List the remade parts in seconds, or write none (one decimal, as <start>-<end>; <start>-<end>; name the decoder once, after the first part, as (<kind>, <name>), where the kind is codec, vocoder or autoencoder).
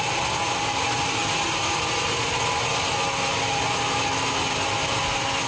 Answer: none